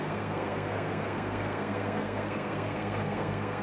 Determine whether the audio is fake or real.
fake